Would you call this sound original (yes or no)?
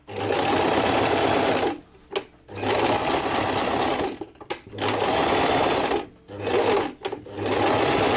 yes